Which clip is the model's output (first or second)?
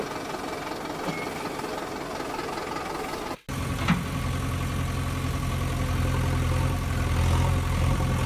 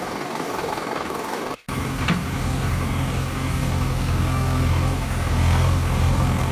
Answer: second